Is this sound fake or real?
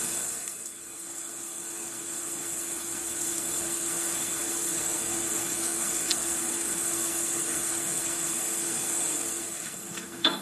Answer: fake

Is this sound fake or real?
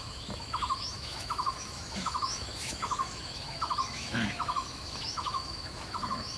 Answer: fake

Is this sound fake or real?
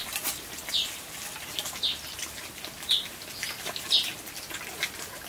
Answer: real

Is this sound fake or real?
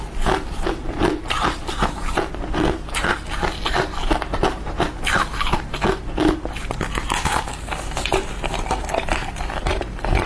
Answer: real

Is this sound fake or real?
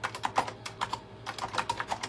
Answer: real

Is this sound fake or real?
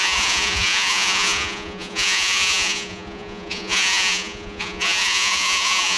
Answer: fake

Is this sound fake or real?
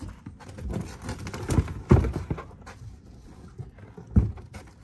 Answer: real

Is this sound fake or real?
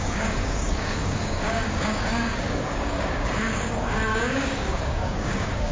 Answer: fake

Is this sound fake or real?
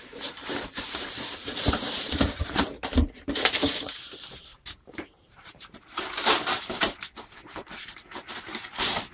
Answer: fake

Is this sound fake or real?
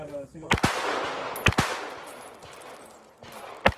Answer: real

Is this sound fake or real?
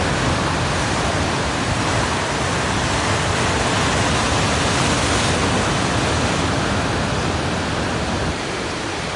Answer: real